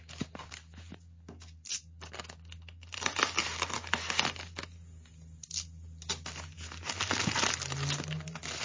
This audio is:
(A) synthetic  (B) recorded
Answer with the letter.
B